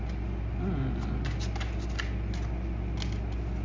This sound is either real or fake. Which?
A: real